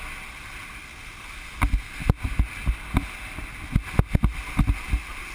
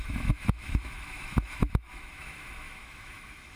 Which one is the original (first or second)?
first